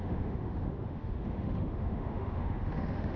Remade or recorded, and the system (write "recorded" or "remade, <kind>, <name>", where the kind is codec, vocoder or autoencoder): remade, autoencoder, DAC-VAE